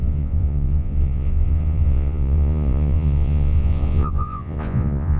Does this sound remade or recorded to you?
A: remade